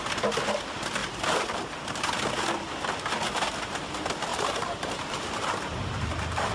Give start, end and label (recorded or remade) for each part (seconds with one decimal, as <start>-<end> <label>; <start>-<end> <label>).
0.0-1.0 recorded; 1.0-2.2 remade; 2.2-4.3 recorded; 4.3-6.5 remade

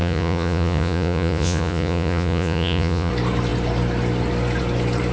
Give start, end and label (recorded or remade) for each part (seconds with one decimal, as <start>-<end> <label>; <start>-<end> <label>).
0.0-3.1 remade; 3.1-5.1 recorded

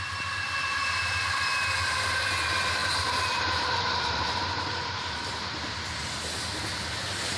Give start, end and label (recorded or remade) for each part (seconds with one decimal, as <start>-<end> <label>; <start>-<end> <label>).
0.0-2.8 recorded; 2.8-5.3 remade; 5.3-7.4 recorded

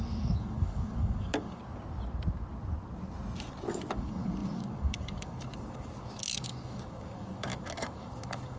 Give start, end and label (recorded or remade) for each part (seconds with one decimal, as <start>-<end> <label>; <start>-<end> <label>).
0.0-1.6 remade; 1.6-3.9 recorded; 3.9-8.6 remade

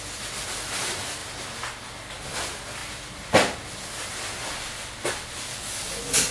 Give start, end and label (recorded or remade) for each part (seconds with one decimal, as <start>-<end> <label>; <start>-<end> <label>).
0.0-5.5 recorded; 5.5-6.3 remade

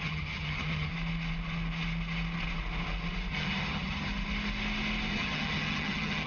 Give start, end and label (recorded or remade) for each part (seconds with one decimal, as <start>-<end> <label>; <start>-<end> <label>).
0.0-0.9 remade; 0.9-3.3 recorded; 3.3-4.1 remade; 4.1-5.1 recorded; 5.1-6.3 remade

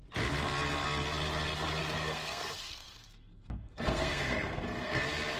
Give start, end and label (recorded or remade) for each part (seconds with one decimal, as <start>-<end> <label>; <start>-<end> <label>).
0.0-1.8 recorded; 1.8-5.0 remade; 5.0-5.4 recorded

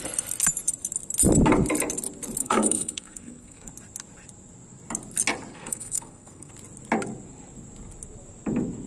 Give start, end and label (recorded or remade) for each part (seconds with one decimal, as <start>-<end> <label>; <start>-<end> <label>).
0.0-2.4 recorded; 2.4-3.7 remade; 3.7-5.5 recorded; 5.5-6.5 remade; 6.5-8.9 recorded